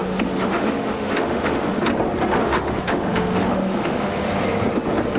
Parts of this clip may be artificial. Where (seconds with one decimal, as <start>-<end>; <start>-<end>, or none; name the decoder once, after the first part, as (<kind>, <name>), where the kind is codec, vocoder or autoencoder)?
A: 0.0-1.8 (autoencoder, DAC-VAE); 2.4-4.3